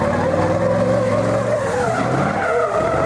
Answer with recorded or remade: recorded